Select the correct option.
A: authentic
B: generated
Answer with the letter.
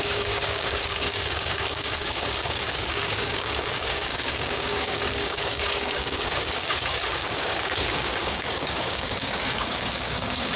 B